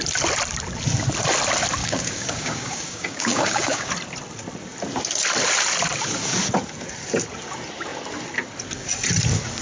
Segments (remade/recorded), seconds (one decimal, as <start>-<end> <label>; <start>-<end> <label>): 0.0-1.8 recorded; 1.8-3.9 remade; 3.9-9.6 recorded

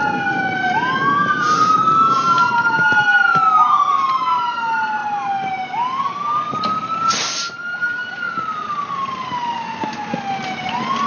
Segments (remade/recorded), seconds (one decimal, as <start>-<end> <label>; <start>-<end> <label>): 0.0-11.1 recorded

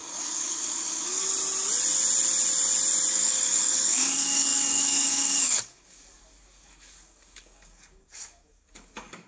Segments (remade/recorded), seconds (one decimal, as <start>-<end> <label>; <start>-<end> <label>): 0.0-1.3 remade; 1.3-3.1 recorded; 3.1-9.3 remade

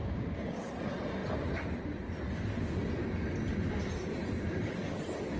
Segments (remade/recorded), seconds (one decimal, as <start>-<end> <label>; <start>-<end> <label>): 0.0-0.7 remade; 0.7-5.4 recorded